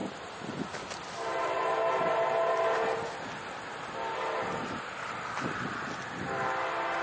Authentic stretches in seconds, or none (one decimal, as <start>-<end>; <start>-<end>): 0.0-7.0